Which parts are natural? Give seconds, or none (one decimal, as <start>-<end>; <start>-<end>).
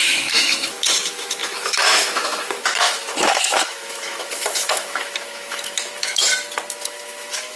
6.2-6.7